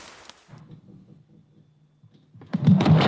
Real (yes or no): yes